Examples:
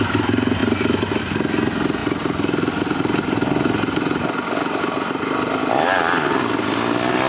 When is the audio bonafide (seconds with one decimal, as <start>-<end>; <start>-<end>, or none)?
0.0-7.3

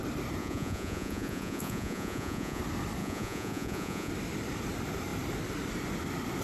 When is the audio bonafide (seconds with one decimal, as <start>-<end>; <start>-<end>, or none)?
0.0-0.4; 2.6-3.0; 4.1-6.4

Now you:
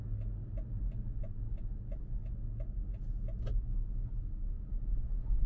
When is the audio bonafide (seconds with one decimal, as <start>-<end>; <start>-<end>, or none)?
0.0-5.5

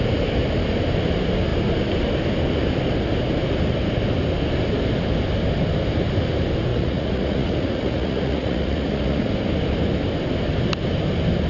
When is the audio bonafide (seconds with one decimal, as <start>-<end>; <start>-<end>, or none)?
0.0-6.7; 9.3-11.5

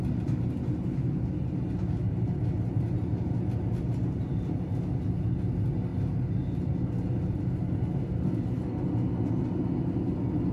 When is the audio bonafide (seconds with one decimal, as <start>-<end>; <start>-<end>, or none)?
0.0-10.5